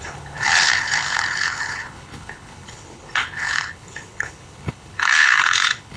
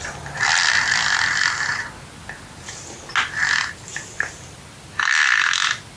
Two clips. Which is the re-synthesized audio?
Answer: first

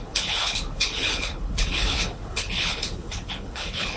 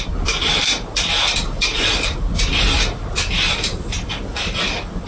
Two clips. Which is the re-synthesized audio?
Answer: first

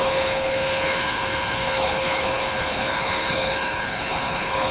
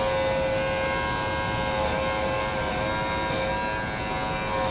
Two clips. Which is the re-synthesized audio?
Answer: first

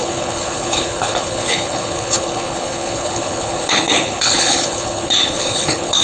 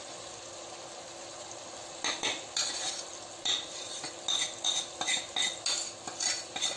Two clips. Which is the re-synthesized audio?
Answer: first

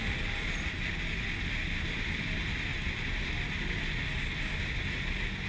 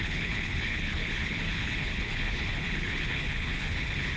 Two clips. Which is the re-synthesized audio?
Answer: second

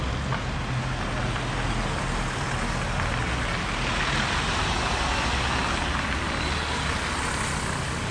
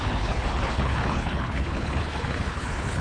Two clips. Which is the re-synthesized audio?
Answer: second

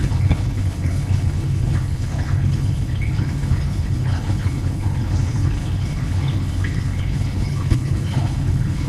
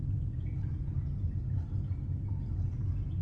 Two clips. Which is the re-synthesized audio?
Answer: first